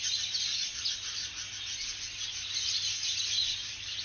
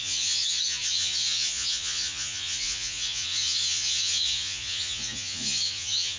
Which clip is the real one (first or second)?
first